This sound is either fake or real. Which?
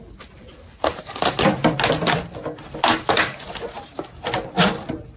real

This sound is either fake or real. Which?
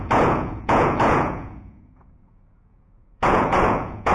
fake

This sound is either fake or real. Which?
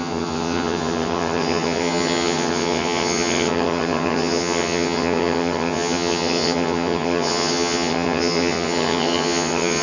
fake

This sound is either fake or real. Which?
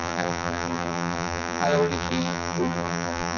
fake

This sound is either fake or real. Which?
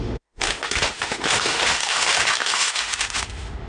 fake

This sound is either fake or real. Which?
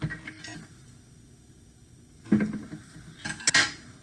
real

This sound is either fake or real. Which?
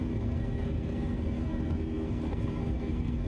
fake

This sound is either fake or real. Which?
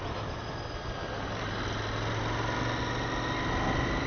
real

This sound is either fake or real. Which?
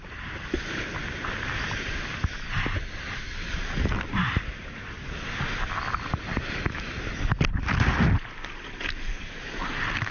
real